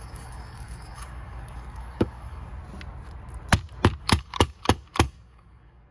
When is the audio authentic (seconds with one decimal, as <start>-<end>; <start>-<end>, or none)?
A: 2.5-4.0